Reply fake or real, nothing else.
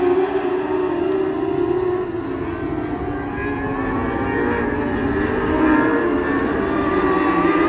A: real